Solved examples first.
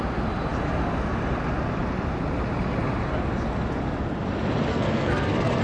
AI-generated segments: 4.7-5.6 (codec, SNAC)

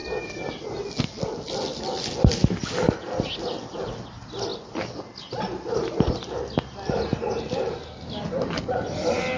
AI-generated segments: none

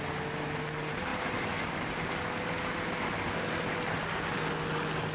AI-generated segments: none

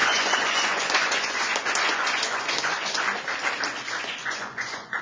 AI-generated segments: 0.0-3.0 (vocoder, Vocos); 4.2-5.0